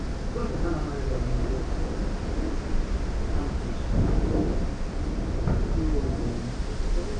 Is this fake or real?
real